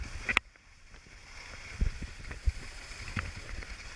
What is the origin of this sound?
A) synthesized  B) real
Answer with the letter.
B